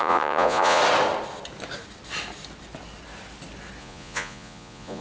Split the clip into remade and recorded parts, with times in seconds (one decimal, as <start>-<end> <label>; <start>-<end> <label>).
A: 0.0-0.8 remade; 0.8-3.8 recorded; 3.8-5.0 remade